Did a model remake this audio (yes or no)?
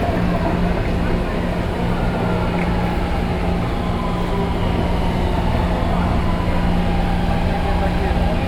no